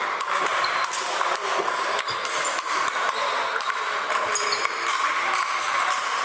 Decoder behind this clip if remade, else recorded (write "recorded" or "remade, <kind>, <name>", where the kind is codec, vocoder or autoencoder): recorded